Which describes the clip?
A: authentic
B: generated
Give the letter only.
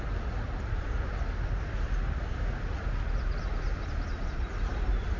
A